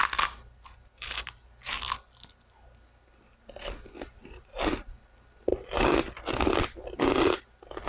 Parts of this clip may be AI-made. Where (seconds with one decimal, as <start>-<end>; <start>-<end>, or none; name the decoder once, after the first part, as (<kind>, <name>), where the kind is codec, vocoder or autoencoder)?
none